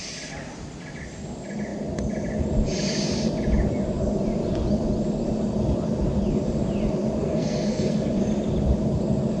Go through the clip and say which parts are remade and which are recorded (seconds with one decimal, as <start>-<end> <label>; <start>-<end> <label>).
0.0-7.2 recorded; 7.2-8.1 remade; 8.1-9.4 recorded